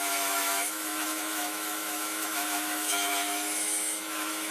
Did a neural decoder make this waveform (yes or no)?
yes